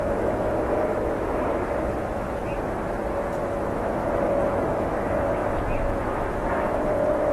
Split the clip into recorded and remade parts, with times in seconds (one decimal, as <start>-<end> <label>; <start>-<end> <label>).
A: 0.0-0.9 remade; 0.9-2.0 recorded; 2.0-2.4 remade; 2.4-3.4 recorded; 3.4-7.3 remade